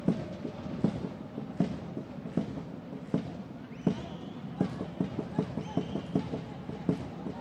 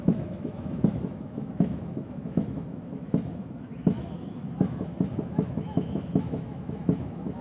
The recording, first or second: first